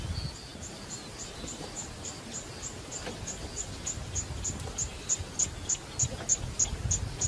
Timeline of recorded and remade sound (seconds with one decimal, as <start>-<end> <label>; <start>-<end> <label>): 0.0-7.3 recorded